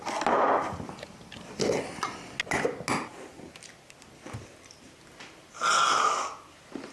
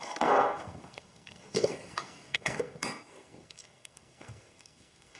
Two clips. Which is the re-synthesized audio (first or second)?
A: second